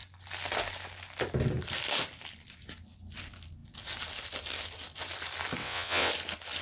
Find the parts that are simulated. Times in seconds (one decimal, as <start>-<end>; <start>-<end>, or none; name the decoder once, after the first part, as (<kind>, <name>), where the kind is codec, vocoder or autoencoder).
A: 5.6-6.1 (vocoder, WaveNeXt)